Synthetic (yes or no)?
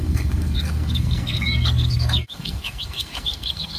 yes